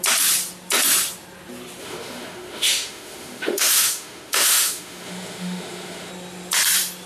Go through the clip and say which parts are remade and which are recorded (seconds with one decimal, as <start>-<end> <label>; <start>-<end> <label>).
0.0-1.8 recorded; 1.8-6.1 remade; 6.1-7.1 recorded